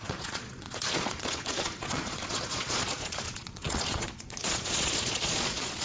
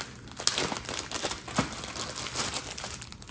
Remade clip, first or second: first